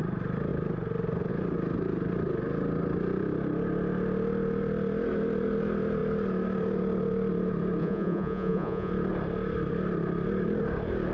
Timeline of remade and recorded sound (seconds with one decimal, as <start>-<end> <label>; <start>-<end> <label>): 0.0-7.8 recorded; 7.8-8.9 remade; 8.9-11.1 recorded